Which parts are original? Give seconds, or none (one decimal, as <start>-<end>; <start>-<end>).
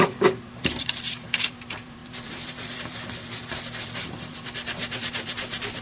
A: none